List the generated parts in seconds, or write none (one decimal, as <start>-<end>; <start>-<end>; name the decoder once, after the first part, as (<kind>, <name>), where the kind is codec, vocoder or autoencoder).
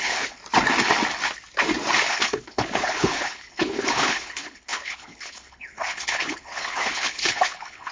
0.0-0.4 (codec, HILCodec); 2.1-7.9